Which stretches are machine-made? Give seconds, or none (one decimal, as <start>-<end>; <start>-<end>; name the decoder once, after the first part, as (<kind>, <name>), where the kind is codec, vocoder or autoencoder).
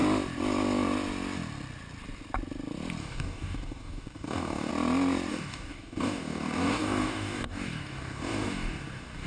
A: 3.0-4.7 (codec, DAC); 5.3-9.3